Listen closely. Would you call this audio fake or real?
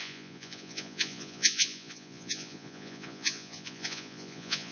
fake